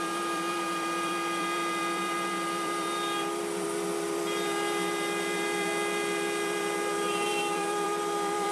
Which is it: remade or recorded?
remade